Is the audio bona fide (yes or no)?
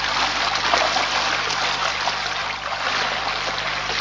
yes